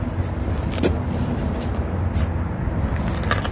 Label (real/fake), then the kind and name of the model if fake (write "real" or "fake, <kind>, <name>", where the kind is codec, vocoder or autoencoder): real